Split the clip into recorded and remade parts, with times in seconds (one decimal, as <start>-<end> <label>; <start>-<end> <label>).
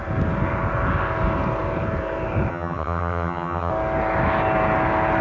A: 0.0-2.5 recorded; 2.5-3.7 remade; 3.7-5.2 recorded